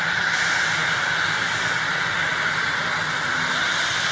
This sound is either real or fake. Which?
real